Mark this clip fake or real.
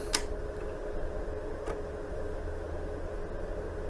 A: real